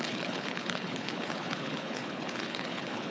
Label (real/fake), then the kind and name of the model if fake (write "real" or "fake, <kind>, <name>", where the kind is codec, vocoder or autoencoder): fake, codec, HILCodec